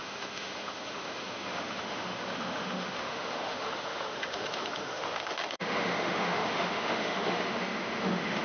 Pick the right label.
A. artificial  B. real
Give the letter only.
A